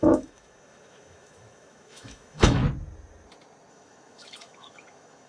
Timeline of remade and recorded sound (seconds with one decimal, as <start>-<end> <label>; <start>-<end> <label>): 0.0-2.6 remade; 2.6-3.7 recorded; 3.7-5.3 remade